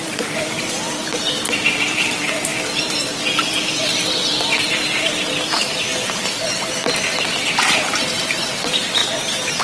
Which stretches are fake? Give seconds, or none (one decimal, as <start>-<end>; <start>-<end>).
none